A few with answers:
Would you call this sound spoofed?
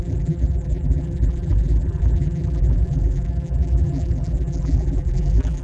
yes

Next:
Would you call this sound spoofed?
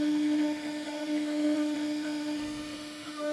yes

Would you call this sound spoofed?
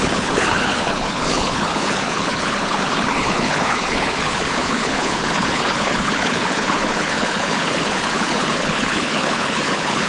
yes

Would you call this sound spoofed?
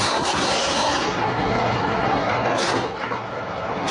yes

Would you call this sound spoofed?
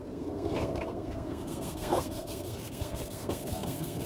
yes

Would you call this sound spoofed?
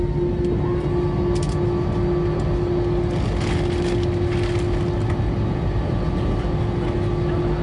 no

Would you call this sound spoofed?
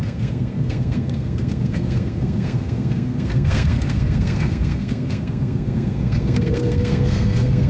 yes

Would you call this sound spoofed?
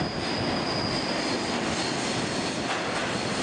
no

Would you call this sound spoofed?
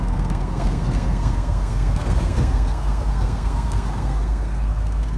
yes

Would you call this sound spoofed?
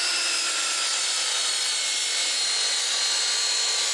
no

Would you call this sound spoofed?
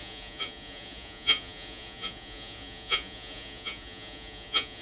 yes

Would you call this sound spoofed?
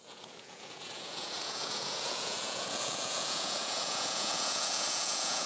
yes